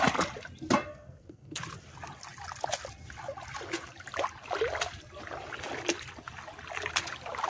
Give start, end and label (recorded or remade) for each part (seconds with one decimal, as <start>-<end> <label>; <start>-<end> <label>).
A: 0.0-0.9 recorded; 0.9-1.6 remade; 1.6-7.5 recorded